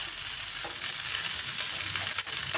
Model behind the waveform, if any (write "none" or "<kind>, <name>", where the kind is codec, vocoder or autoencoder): none